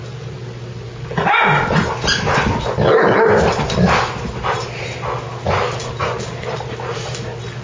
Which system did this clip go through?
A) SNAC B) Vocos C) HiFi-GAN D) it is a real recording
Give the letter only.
D